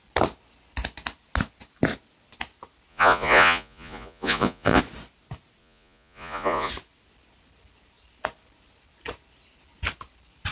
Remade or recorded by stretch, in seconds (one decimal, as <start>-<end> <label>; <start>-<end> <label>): 0.0-2.9 recorded; 2.9-4.8 remade; 4.8-5.6 recorded; 5.6-6.7 remade; 6.7-10.5 recorded